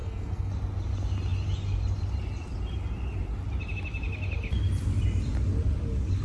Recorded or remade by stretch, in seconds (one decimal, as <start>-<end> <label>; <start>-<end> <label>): 0.0-0.5 remade; 0.5-6.2 recorded